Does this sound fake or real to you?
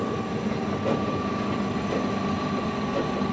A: real